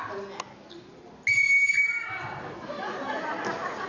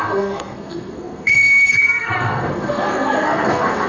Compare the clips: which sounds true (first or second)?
first